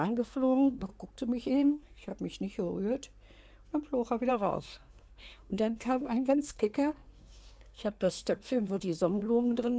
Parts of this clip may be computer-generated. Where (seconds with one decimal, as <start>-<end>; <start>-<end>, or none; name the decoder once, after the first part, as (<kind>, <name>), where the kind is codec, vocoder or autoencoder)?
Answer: 0.0-0.9 (codec, SNAC); 1.5-2.1; 4.3-9.8